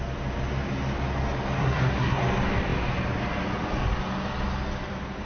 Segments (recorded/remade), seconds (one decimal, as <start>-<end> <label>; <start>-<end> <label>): 0.0-1.6 recorded; 1.6-2.2 remade; 2.2-5.3 recorded